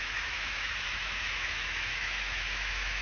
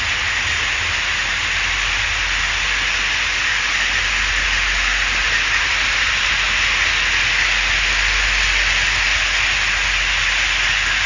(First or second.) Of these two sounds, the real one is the second